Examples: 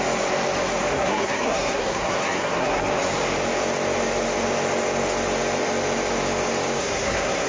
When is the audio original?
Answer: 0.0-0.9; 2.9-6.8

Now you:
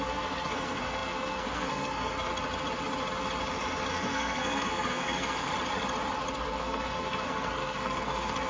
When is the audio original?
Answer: 2.3-3.9; 5.5-6.4

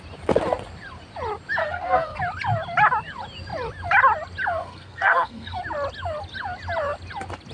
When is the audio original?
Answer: 0.0-1.6; 2.2-4.6; 5.6-7.5

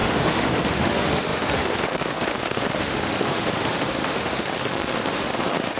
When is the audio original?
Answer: none

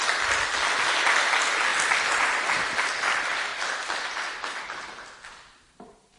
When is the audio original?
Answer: 0.0-3.5; 4.5-6.2

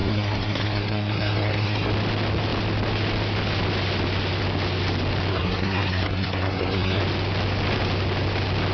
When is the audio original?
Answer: 1.9-5.3; 7.0-8.7

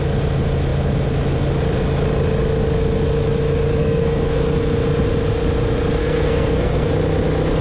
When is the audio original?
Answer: 0.0-3.8; 4.5-6.0; 6.9-7.6